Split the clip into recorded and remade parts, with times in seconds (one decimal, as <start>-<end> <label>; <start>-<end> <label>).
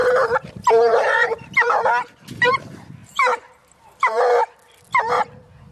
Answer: 0.0-1.9 remade; 1.9-3.0 recorded; 3.0-4.2 remade; 4.2-4.9 recorded; 4.9-5.7 remade